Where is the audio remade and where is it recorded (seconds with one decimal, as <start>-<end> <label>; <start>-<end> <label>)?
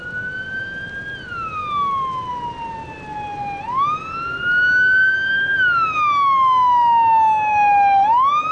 0.0-8.5 recorded